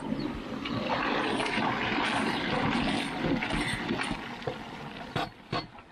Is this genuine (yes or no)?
yes